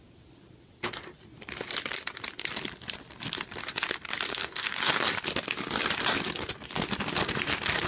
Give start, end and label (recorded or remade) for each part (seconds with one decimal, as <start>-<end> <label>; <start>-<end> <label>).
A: 0.0-4.3 recorded; 4.3-4.9 remade; 4.9-7.9 recorded